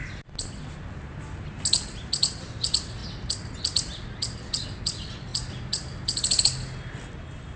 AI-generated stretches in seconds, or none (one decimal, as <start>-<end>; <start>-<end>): none